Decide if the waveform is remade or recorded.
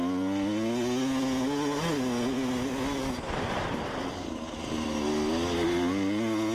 recorded